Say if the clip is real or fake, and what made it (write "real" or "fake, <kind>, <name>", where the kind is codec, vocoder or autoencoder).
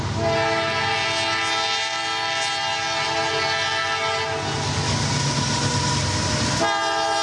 real